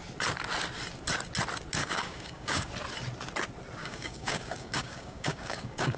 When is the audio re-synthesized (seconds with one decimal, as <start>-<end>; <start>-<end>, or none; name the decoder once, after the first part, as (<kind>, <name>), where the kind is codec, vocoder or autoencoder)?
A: 1.8-2.7 (codec, DAC); 3.8-6.0

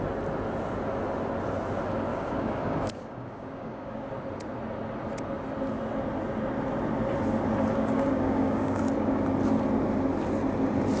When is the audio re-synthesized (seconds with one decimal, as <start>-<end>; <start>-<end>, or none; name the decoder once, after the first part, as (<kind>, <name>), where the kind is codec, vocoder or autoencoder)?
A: 2.1-4.1 (codec, DAC); 7.7-9.2

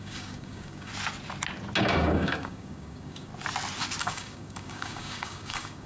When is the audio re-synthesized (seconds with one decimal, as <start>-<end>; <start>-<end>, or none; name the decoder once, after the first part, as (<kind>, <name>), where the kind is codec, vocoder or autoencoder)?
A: 0.0-0.9 (codec, DAC); 1.8-3.3; 4.0-5.9

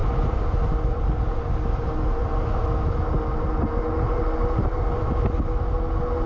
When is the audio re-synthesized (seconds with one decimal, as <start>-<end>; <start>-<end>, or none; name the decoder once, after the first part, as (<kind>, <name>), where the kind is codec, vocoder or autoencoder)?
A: none

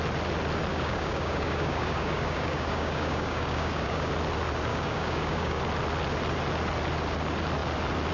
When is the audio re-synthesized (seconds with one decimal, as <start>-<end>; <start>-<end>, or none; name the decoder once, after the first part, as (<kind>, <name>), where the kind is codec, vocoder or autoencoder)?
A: 0.7-4.1 (codec, DAC); 4.7-5.6

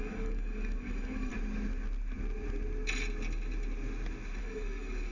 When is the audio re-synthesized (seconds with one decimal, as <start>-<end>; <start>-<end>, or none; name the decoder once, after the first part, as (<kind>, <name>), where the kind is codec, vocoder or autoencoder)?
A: 0.0-1.3 (codec, DAC); 4.4-5.1

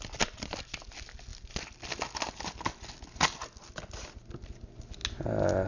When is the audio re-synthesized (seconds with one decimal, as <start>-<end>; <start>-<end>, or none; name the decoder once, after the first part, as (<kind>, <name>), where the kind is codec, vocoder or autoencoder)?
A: none

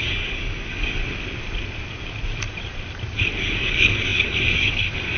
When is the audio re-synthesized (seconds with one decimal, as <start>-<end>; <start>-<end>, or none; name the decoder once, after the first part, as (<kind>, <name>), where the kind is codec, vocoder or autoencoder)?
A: 0.0-1.0 (codec, DAC); 3.4-5.2